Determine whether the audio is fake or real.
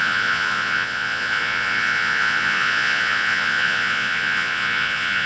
fake